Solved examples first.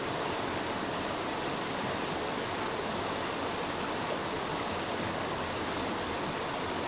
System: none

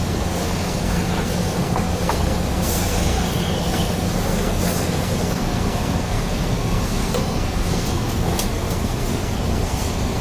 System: codec, SNAC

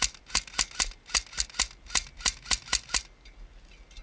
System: none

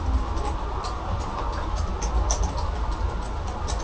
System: none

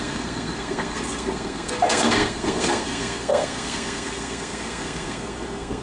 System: codec, SNAC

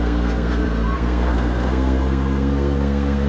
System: codec, SNAC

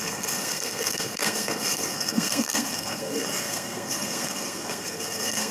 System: codec, SNAC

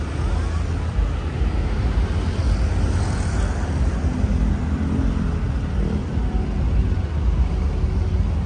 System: none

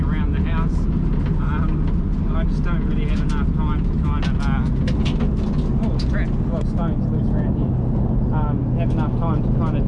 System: none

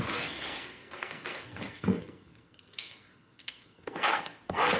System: codec, SNAC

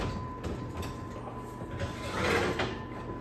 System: none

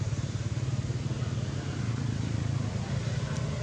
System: none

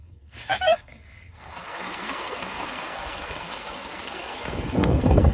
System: codec, SNAC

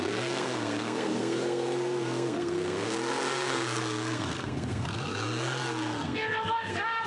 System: codec, SNAC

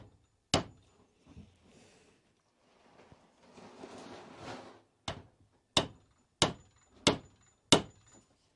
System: none